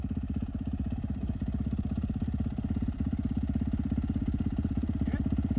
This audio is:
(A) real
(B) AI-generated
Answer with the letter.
B